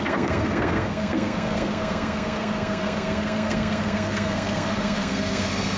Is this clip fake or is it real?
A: fake